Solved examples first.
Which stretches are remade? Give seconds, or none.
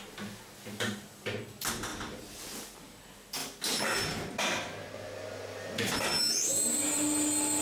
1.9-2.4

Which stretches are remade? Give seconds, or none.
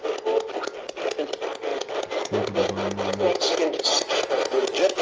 none